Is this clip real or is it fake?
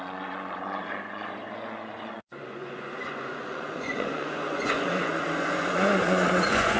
fake